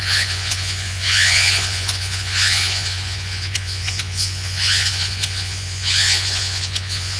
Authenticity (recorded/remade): remade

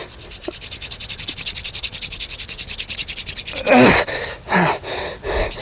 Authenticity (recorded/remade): recorded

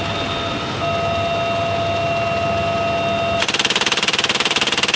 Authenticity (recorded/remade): recorded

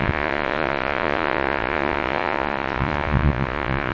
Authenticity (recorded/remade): remade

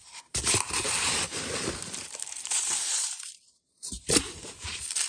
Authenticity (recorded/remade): remade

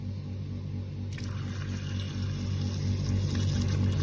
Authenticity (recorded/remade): recorded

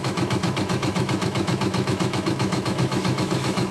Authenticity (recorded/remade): remade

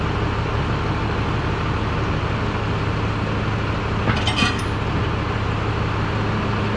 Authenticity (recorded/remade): recorded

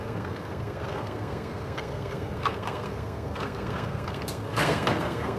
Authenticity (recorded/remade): remade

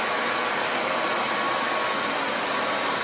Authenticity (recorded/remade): recorded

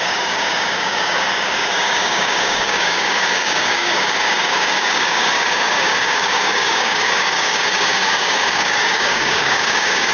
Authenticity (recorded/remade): remade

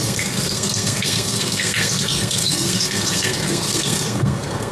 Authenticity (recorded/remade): remade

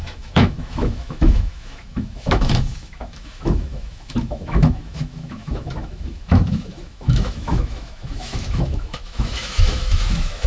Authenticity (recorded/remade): remade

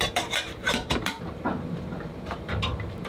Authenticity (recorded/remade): remade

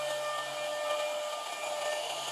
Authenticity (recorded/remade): recorded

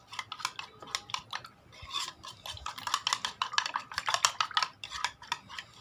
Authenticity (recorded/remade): recorded